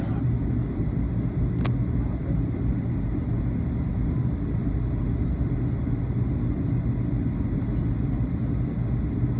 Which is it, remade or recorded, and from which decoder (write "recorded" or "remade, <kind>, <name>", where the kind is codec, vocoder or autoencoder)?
recorded